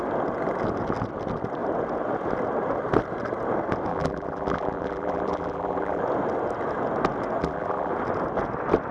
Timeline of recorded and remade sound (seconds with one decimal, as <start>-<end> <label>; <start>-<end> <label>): 0.0-3.9 recorded; 3.9-6.0 remade; 6.0-7.4 recorded; 7.4-7.9 remade; 7.9-8.9 recorded